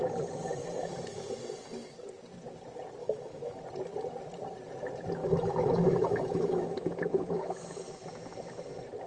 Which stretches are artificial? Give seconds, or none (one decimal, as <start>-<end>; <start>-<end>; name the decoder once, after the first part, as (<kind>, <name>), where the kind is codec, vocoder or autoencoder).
3.0-3.6 (autoencoder, DAC-VAE); 5.2-7.7